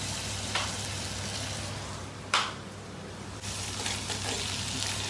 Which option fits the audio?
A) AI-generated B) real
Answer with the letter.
B